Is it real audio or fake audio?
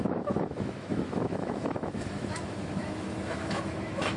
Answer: fake